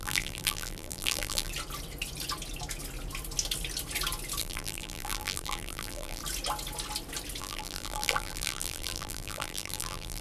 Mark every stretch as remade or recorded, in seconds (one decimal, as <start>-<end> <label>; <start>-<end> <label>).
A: 0.0-1.5 remade; 1.5-4.4 recorded; 4.4-6.2 remade; 6.2-7.4 recorded; 7.4-10.2 remade